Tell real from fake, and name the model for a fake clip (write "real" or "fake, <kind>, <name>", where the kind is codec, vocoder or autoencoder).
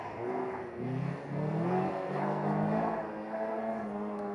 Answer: fake, codec, SNAC